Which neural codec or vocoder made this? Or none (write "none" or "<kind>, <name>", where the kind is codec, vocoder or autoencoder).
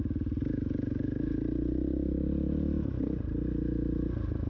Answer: none